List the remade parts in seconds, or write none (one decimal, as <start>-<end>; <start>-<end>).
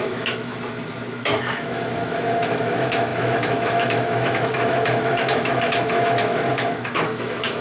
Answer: 0.0-0.5; 1.1-7.6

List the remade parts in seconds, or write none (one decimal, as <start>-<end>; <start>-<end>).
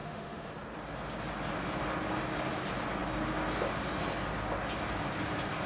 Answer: 0.0-0.5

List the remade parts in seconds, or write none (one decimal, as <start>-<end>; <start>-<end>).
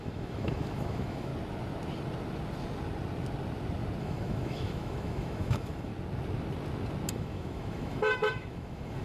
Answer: 0.0-1.3; 4.0-5.9; 7.1-9.0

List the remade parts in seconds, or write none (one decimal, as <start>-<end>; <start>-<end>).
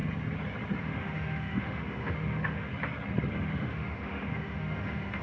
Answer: 0.8-2.7; 3.3-5.2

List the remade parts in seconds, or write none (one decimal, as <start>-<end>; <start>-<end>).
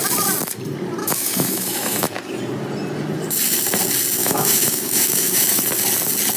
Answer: 1.0-2.2; 4.2-5.6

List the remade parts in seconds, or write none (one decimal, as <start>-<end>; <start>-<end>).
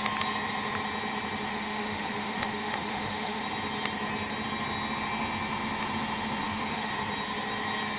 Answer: 1.5-3.4; 6.4-6.9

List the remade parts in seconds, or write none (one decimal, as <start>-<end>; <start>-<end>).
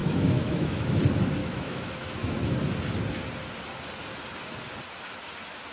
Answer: 0.0-1.0; 1.4-2.3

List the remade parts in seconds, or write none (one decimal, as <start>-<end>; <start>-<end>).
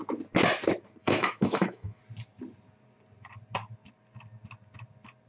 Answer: 1.0-2.0